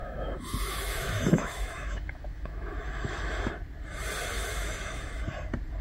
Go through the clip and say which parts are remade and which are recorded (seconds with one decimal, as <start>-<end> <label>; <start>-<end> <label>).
0.0-3.5 remade; 3.5-4.3 recorded; 4.3-5.2 remade; 5.2-5.8 recorded